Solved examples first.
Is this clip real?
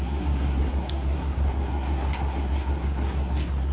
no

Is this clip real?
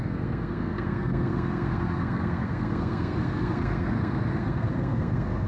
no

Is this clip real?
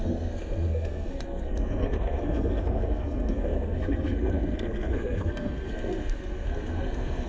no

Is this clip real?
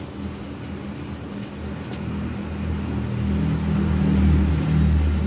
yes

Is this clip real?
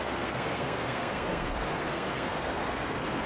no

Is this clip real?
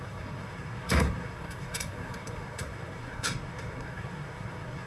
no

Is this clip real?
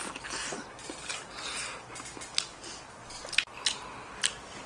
yes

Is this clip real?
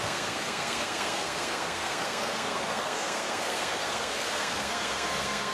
no